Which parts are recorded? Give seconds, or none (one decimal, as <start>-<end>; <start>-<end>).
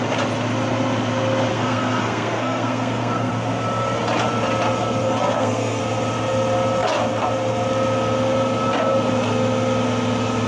0.0-1.5; 3.3-5.0; 5.8-10.5